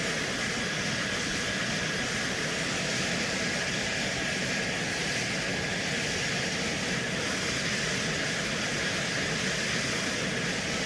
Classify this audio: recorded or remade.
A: recorded